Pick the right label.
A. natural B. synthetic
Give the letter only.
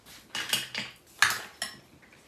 A